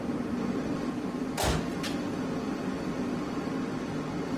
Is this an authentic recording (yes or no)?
yes